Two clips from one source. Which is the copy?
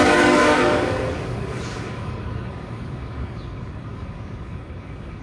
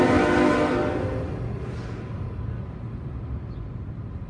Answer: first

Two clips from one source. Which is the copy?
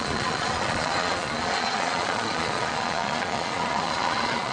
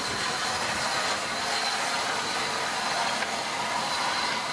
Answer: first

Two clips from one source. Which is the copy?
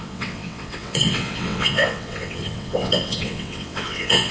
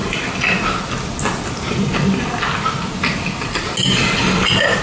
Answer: first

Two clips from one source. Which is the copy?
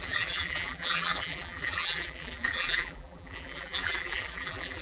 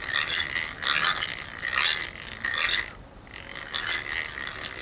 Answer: first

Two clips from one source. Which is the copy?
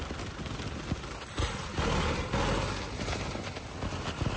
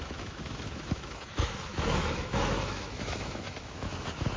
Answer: second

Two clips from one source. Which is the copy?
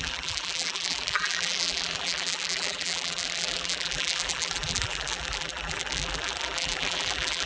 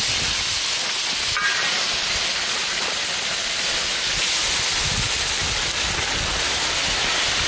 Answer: first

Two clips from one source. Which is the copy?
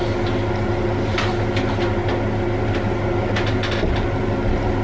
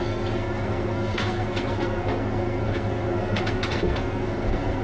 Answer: second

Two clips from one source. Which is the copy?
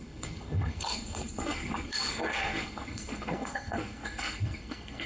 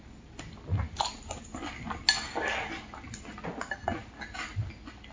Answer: first